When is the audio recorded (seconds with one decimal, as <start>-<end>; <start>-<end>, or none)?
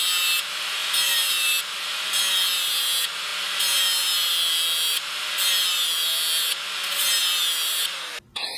0.0-0.8; 1.6-8.6